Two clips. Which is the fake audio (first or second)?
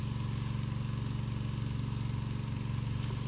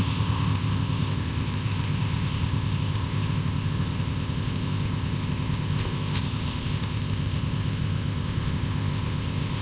second